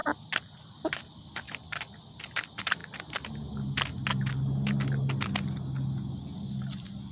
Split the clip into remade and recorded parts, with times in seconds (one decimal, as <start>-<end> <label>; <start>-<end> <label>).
0.0-7.1 recorded